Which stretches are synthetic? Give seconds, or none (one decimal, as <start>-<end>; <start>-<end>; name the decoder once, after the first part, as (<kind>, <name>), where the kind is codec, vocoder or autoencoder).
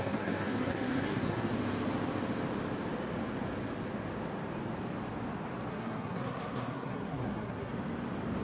0.0-1.5 (codec, SNAC); 5.7-7.7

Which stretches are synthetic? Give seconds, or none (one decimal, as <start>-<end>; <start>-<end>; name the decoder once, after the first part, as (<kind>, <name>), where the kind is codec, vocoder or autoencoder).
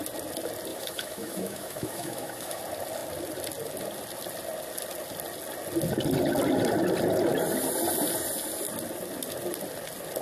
0.7-2.6 (autoencoder, DAC-VAE)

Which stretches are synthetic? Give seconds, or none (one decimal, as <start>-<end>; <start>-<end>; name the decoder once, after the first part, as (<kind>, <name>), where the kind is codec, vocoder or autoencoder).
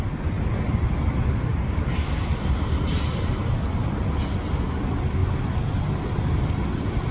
none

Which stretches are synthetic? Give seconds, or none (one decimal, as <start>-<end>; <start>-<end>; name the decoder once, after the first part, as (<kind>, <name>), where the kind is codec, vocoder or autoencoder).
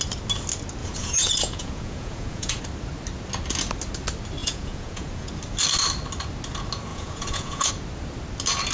0.8-2.6 (vocoder, Vocos); 4.4-5.3; 6.9-7.7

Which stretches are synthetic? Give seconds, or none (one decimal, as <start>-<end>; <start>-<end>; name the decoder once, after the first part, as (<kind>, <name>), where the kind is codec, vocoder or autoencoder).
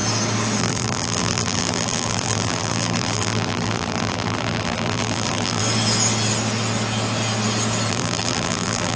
0.6-5.6 (vocoder, BigVGAN v2); 7.9-9.0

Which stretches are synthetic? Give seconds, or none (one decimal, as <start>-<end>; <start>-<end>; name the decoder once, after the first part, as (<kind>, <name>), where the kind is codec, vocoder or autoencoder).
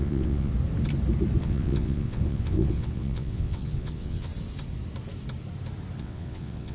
0.0-0.5 (vocoder, WaveNeXt); 1.4-4.3; 6.0-6.7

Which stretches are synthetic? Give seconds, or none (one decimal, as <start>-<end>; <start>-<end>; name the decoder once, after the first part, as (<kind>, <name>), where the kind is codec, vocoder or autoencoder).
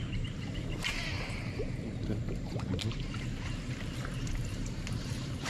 0.0-2.5 (vocoder, BigVGAN v2); 4.3-5.5